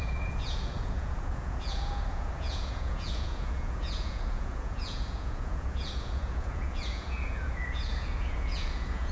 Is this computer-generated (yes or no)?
yes